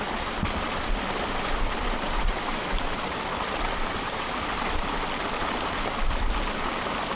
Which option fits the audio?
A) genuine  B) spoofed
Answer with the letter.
A